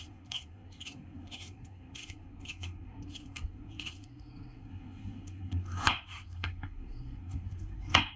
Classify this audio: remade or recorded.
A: remade